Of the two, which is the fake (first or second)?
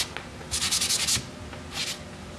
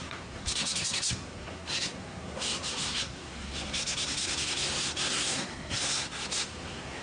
second